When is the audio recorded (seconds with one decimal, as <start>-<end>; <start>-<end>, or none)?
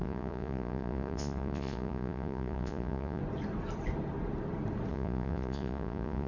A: 3.2-4.9